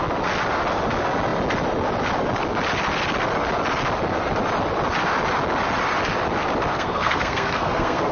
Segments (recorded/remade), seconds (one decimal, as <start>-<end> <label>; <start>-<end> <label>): 0.0-6.7 recorded; 6.7-8.1 remade